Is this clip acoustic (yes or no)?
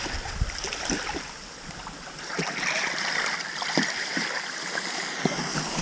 yes